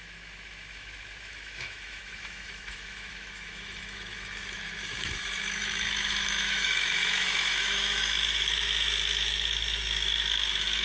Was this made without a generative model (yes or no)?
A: no